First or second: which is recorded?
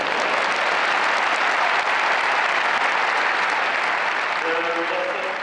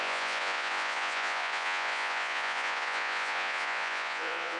first